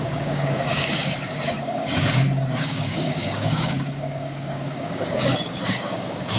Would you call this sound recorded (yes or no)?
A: no